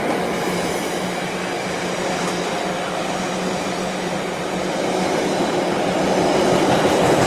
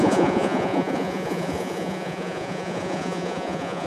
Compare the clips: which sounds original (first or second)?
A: first